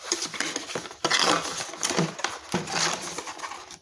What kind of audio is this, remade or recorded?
recorded